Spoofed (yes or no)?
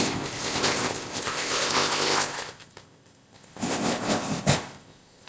yes